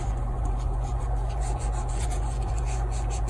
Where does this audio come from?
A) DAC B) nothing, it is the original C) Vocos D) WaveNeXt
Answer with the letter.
C